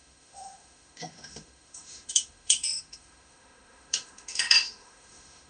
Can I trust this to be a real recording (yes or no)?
no